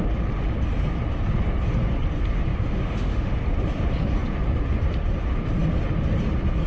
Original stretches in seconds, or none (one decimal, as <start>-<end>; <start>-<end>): 0.0-2.5; 3.4-6.7

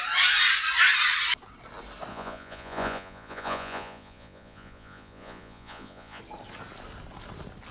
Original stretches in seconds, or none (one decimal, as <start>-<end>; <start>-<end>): 0.0-2.1; 6.2-7.7

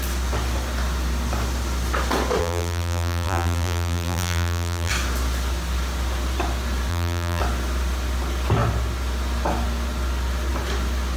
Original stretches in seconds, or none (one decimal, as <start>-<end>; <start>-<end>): 0.0-2.4; 4.9-6.9; 7.4-11.2

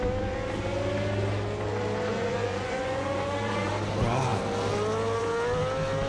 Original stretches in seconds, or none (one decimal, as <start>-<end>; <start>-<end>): 0.0-2.1; 3.7-6.1

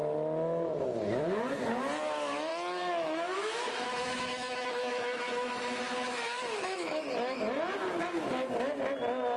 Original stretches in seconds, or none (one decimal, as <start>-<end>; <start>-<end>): 0.0-2.5; 7.4-9.4

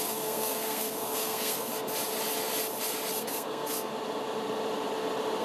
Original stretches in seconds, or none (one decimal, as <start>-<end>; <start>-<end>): 1.7-3.2; 3.9-5.4

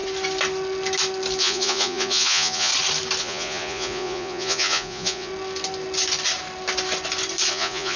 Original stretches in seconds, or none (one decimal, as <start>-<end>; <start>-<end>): 0.0-1.4; 2.7-3.2; 5.3-7.5